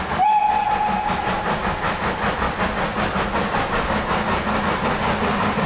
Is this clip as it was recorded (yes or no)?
yes